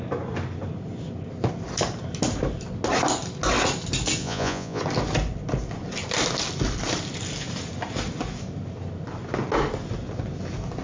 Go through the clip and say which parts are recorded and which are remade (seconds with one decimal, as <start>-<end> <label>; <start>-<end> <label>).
0.0-4.2 recorded; 4.2-4.8 remade; 4.8-10.8 recorded